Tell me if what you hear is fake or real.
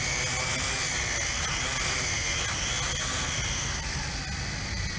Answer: real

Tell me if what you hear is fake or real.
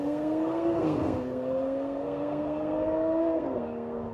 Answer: fake